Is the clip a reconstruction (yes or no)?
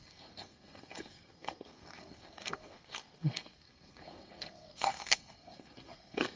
yes